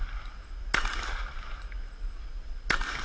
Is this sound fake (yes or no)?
no